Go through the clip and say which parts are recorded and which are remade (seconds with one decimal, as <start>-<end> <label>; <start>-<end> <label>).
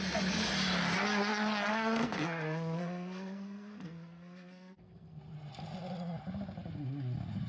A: 0.0-1.7 recorded; 1.7-5.2 remade; 5.2-7.5 recorded